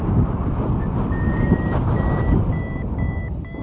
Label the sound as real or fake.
real